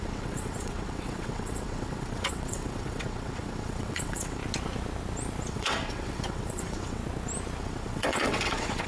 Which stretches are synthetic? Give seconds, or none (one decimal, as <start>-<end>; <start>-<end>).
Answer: 0.0-4.4; 5.5-7.0; 7.6-8.9